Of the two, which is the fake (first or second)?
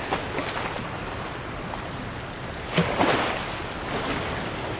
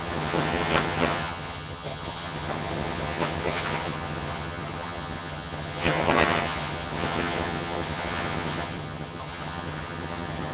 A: second